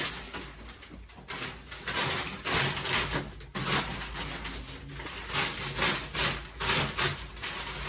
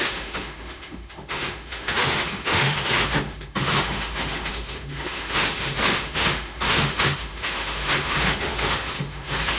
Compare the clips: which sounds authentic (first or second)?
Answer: first